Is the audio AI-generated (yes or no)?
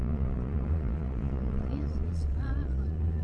yes